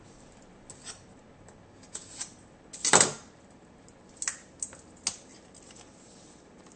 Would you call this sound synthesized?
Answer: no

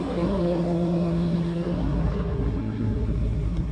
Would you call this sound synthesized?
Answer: yes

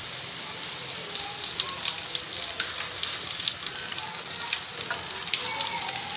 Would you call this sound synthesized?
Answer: no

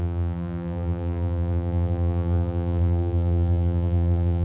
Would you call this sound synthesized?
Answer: yes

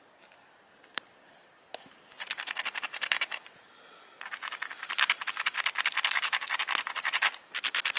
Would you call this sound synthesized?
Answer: no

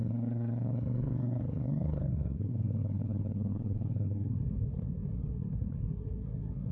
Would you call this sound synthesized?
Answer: yes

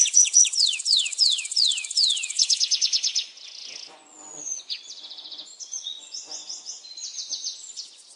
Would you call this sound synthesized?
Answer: yes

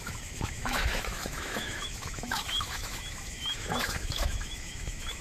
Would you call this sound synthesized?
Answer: yes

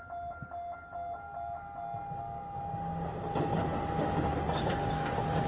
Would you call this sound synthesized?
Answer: no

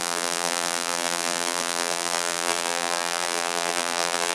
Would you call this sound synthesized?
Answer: yes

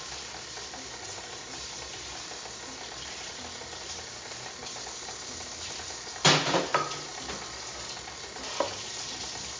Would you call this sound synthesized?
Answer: no